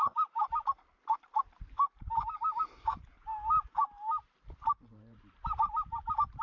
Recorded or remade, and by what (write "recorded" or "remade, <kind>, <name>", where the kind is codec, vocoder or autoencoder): remade, vocoder, BigVGAN v2